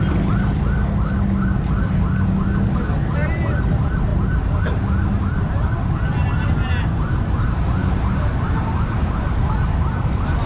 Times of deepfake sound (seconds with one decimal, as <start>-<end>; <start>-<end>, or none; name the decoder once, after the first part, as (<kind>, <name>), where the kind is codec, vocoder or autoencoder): none

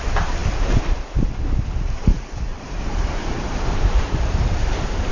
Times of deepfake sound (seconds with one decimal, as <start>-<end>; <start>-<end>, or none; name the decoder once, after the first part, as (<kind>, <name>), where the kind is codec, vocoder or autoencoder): 2.5-5.1 (vocoder, BigVGAN v2)

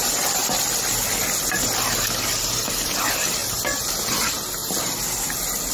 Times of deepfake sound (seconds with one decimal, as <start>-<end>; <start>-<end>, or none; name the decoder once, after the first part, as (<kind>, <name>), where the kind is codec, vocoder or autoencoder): none